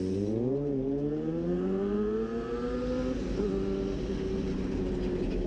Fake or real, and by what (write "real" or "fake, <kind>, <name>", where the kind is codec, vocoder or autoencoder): real